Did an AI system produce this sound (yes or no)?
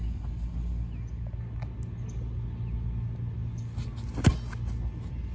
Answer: no